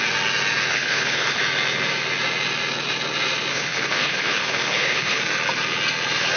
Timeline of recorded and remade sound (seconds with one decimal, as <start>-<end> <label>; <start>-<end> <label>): 0.0-0.7 recorded; 0.7-1.4 remade; 1.4-3.5 recorded; 3.5-5.2 remade; 5.2-6.4 recorded